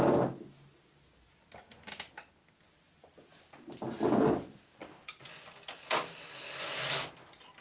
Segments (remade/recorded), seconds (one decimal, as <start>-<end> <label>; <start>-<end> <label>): 0.0-7.6 recorded